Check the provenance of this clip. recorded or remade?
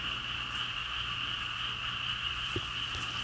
recorded